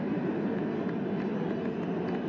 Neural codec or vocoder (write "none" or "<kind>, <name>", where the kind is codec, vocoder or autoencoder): none